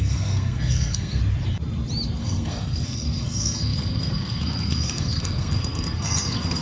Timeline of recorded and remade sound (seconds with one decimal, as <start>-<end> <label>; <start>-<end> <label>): 0.0-1.2 remade; 1.2-2.2 recorded; 2.2-6.6 remade